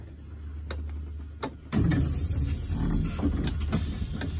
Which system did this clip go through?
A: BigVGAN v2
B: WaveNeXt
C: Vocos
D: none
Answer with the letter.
D